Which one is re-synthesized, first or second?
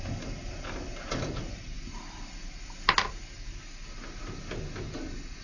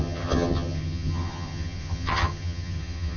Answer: second